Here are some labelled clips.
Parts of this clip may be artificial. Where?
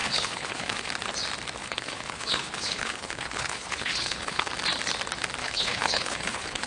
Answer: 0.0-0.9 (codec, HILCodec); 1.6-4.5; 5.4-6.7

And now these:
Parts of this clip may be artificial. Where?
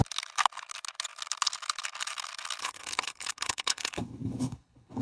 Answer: 2.6-5.0 (codec, HILCodec)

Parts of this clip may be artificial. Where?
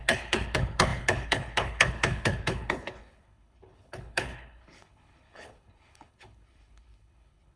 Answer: 0.0-7.6 (codec, HILCodec)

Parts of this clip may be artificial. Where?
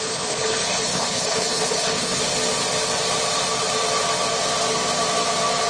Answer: 0.0-2.2 (codec, HILCodec)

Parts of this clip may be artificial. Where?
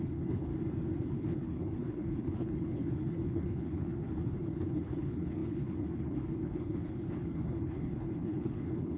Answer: 0.0-0.5 (codec, HILCodec); 1.1-9.0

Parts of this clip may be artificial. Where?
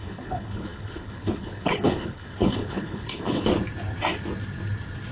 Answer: 0.0-3.5 (codec, HILCodec)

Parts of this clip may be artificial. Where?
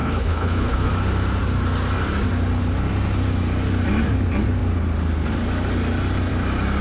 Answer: 0.0-0.9 (codec, HILCodec)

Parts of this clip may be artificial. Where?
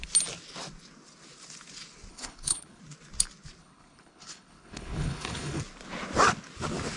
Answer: 2.1-2.8 (codec, HILCodec); 3.6-5.6